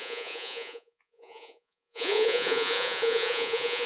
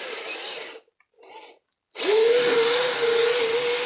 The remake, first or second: first